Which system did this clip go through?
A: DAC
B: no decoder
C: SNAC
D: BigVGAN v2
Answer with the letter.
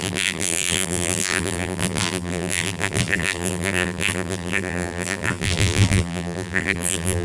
D